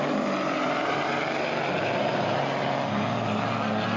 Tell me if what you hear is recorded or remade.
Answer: recorded